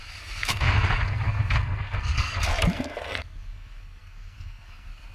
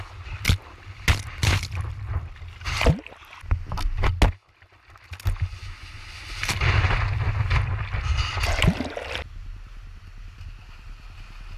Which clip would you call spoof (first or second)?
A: first